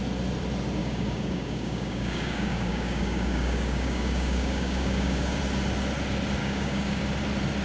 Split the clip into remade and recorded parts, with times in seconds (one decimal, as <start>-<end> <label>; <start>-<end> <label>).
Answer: 0.0-0.8 recorded; 0.8-5.4 remade; 5.4-6.4 recorded; 6.4-7.0 remade; 7.0-7.6 recorded